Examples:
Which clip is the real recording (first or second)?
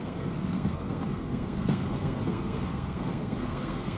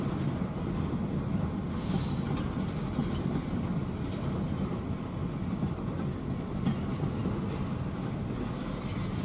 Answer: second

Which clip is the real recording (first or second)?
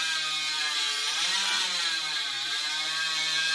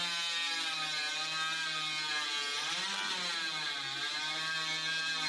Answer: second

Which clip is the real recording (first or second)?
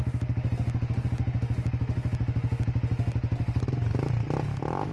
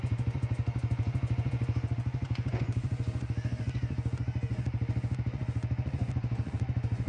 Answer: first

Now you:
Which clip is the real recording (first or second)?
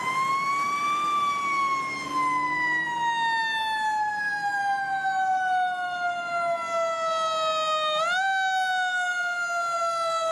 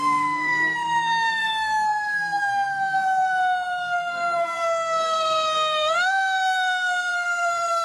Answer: first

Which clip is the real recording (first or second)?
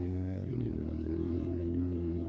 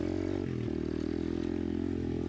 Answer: second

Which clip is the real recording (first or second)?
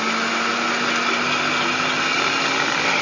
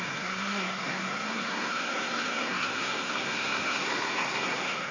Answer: first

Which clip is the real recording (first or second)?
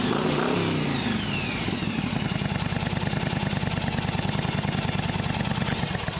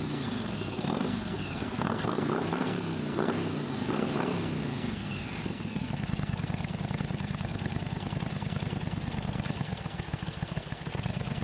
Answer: first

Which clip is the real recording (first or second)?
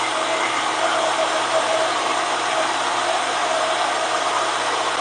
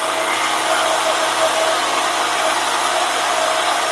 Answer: second